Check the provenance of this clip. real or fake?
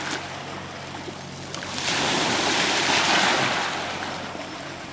real